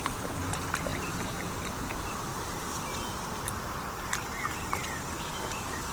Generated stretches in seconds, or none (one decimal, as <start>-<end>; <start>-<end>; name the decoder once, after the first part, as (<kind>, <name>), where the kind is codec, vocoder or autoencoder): 0.0-2.3 (vocoder, BigVGAN v2)